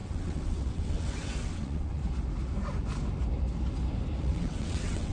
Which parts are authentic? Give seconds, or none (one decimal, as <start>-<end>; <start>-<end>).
2.0-4.2